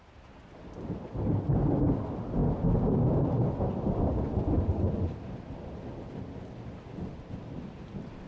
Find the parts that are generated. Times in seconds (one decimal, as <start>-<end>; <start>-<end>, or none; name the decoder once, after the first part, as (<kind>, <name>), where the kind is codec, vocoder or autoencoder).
none